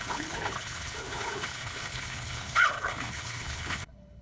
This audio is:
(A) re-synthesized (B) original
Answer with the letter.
A